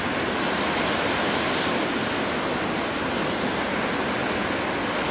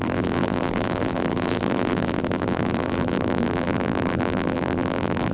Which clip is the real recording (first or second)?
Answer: first